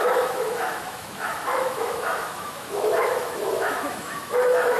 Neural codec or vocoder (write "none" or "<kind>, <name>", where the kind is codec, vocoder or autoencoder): autoencoder, DAC-VAE